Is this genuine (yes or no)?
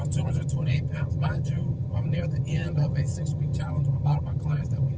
no